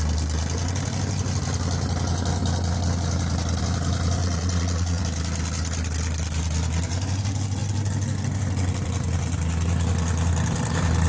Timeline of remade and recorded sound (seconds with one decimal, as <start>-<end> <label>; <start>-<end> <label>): 0.0-4.2 recorded; 4.2-5.0 remade; 5.0-11.1 recorded